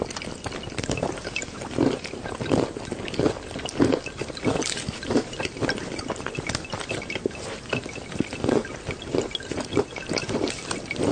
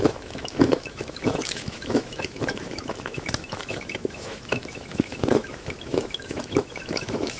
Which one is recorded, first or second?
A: first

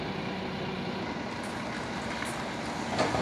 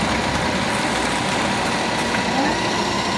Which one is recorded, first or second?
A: first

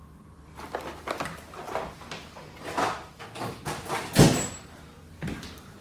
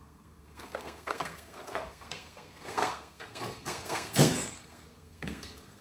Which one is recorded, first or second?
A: first